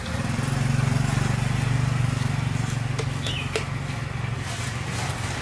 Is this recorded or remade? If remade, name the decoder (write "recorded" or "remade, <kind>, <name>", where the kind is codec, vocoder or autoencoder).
recorded